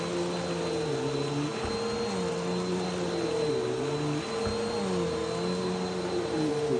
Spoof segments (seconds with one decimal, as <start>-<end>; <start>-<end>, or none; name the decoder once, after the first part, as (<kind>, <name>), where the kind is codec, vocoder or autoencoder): none